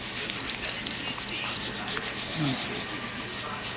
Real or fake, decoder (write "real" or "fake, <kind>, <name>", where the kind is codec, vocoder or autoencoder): real